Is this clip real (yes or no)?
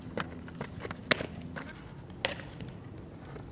yes